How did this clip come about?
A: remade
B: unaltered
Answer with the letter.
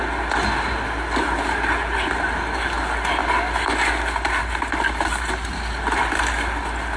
B